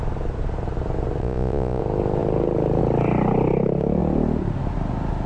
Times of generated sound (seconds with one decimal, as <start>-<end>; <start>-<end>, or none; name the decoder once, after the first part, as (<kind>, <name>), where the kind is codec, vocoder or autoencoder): 1.2-1.8 (vocoder, Vocos)